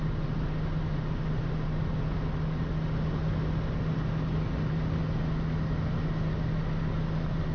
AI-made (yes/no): no